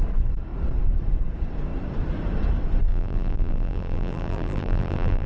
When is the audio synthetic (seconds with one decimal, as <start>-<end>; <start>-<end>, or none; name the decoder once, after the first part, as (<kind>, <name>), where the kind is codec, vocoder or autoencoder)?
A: 2.9-5.3 (vocoder, BigVGAN v2)